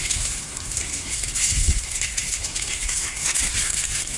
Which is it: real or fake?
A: fake